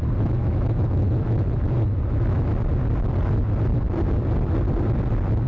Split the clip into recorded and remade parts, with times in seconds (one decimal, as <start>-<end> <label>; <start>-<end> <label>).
0.0-0.4 recorded; 0.4-2.5 remade; 2.5-5.5 recorded